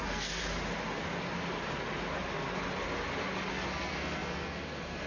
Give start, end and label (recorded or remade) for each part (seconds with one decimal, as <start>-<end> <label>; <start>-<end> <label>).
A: 0.0-0.4 remade; 0.4-3.5 recorded; 3.5-5.1 remade